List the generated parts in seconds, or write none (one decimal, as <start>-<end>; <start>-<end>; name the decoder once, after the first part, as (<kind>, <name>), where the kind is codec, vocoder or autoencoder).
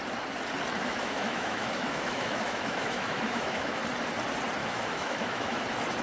0.8-3.8 (autoencoder, DAC-VAE); 4.6-5.6